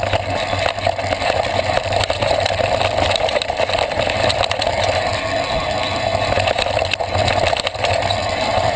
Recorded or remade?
recorded